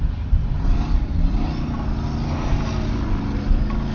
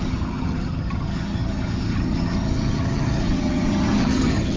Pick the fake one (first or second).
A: second